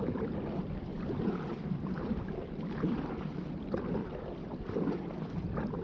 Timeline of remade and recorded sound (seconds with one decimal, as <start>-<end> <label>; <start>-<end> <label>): 0.0-5.8 recorded